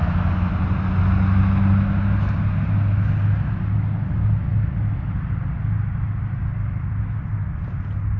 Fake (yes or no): no